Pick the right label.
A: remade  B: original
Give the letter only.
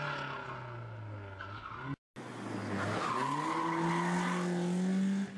B